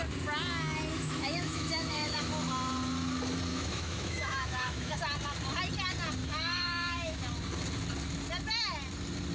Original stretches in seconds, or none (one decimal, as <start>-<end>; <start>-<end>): 0.0-0.9; 2.3-3.5; 5.0-6.2; 7.2-9.3